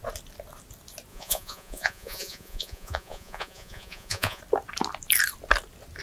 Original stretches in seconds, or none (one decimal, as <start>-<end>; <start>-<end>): 0.0-1.1; 4.4-6.0